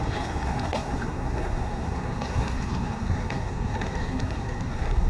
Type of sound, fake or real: fake